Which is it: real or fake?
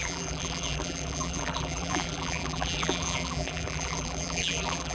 fake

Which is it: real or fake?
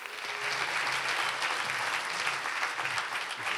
real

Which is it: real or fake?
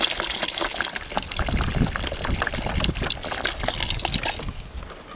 real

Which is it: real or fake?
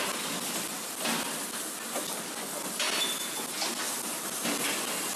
real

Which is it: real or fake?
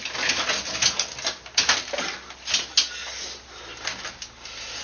real